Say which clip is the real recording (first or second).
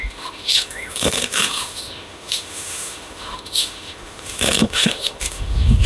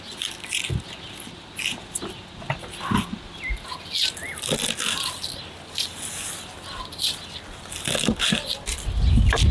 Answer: second